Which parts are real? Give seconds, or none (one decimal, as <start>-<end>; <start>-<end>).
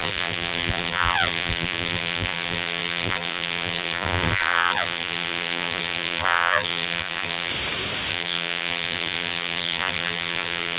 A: 7.5-8.1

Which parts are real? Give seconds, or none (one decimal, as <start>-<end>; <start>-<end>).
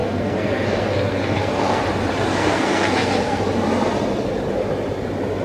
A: 1.8-2.3; 3.4-5.4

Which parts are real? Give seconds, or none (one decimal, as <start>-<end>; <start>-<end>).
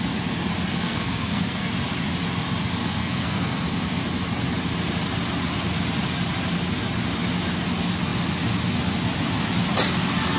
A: 0.0-0.7; 1.7-2.8; 4.0-10.4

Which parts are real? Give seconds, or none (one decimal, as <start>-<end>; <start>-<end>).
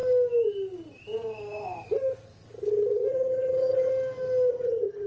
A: 0.0-3.1; 3.9-4.5